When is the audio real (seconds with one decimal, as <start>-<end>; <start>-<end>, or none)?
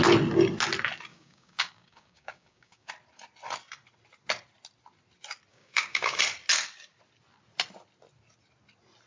0.0-1.1; 2.9-5.5; 6.2-9.1